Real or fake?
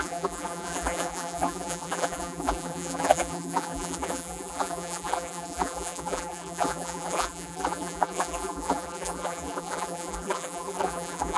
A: fake